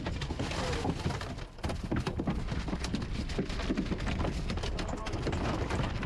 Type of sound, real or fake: real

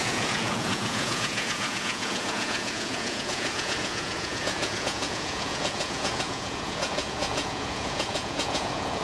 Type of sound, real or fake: fake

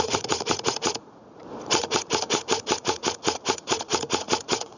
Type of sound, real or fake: fake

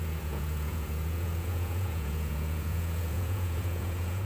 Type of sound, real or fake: fake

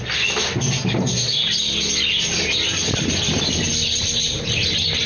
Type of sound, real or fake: real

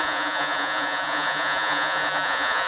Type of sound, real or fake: fake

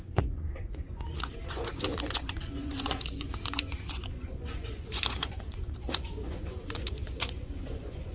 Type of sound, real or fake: fake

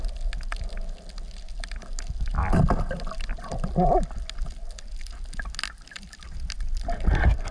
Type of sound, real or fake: real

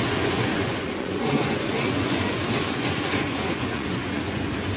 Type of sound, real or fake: fake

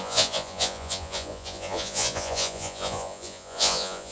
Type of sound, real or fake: fake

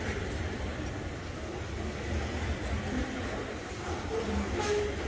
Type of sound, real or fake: real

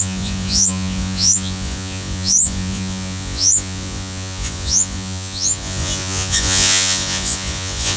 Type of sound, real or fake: fake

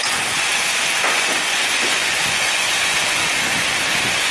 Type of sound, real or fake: fake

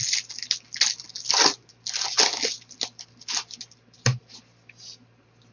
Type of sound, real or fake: real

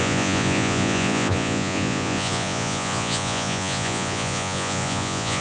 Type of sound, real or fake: fake